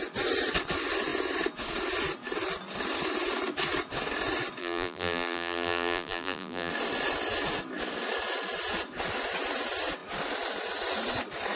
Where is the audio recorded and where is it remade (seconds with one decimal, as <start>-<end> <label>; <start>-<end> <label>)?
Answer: 0.0-4.6 recorded; 4.6-6.7 remade; 6.7-11.6 recorded